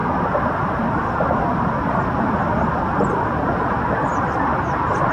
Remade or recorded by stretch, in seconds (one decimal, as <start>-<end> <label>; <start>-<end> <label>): 0.0-5.1 recorded